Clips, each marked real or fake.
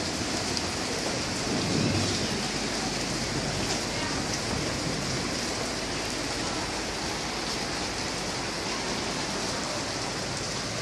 real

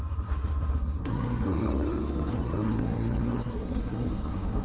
fake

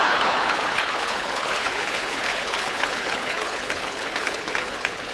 fake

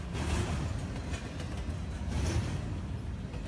real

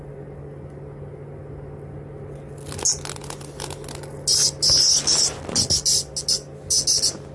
real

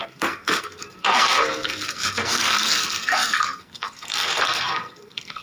fake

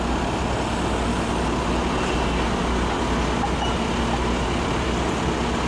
real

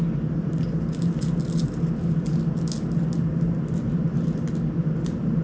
real